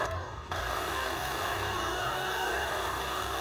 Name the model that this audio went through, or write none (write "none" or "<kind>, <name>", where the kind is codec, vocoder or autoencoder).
codec, DAC